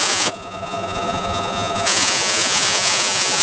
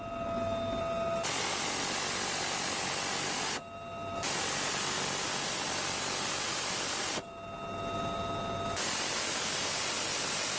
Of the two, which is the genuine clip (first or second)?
second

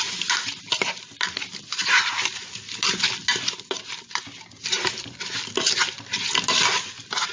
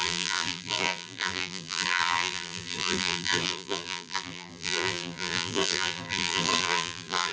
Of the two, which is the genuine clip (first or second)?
first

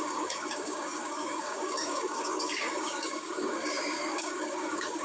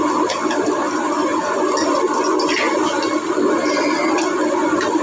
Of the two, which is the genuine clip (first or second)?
second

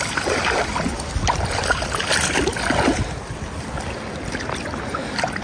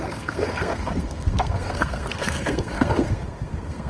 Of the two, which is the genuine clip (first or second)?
first